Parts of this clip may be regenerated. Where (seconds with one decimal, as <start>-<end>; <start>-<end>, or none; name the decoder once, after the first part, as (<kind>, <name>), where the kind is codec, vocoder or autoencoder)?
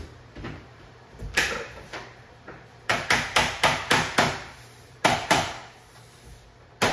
0.0-5.6 (vocoder, BigVGAN v2)